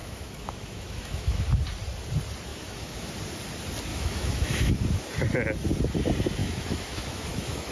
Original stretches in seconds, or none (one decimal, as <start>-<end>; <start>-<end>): 1.4-2.5; 3.1-3.9; 4.7-6.4